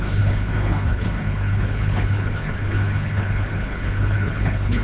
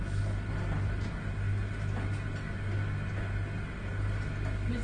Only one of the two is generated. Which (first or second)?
first